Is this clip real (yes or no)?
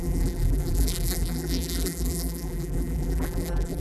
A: no